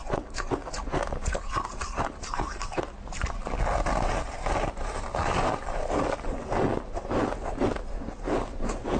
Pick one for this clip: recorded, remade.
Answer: recorded